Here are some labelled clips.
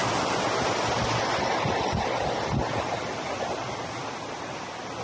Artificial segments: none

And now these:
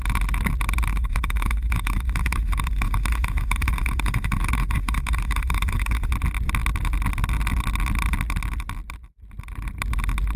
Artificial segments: 0.9-6.1 (autoencoder, DAC-VAE)

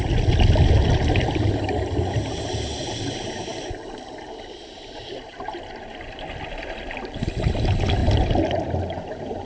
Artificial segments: none

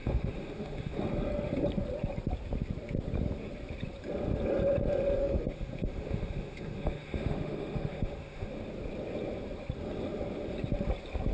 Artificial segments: 0.0-1.0 (autoencoder, DAC-VAE); 5.2-8.6

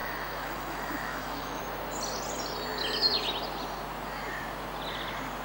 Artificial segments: 0.0-1.6 (autoencoder, DAC-VAE)

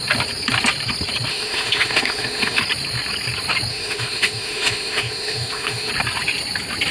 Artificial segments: 1.3-2.6 (autoencoder, DAC-VAE); 3.7-5.9

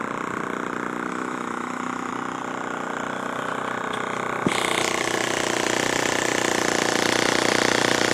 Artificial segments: 1.1-2.1 (autoencoder, DAC-VAE)

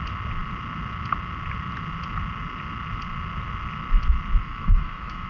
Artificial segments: 4.4-5.3 (autoencoder, DAC-VAE)